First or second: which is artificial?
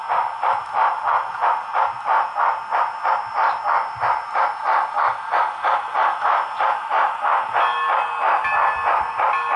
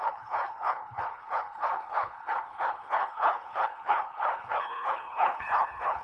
second